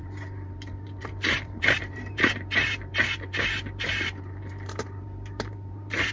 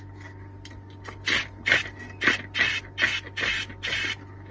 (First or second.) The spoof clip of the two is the first